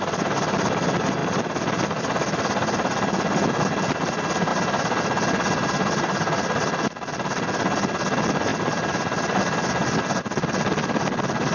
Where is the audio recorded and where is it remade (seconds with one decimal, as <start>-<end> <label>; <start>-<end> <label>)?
0.0-11.5 recorded